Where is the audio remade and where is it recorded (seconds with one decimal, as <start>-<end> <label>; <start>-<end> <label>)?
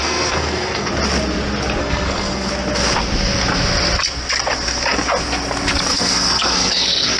0.0-0.9 remade; 0.9-1.8 recorded; 1.8-2.5 remade; 2.5-5.9 recorded; 5.9-7.2 remade